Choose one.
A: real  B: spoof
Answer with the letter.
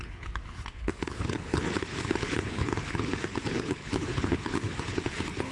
B